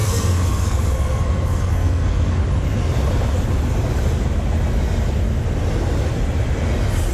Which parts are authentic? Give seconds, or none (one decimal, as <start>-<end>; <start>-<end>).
2.4-7.1